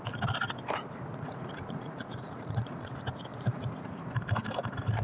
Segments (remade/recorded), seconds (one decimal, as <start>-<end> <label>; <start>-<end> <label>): 0.0-1.1 recorded; 1.1-2.8 remade; 2.8-3.3 recorded; 3.3-3.9 remade; 3.9-5.0 recorded

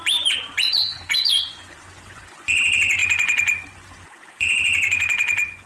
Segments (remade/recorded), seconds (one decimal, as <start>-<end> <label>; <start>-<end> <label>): 0.0-5.7 remade

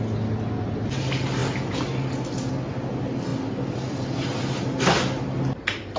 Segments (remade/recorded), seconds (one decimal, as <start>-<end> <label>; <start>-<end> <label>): 0.0-6.0 recorded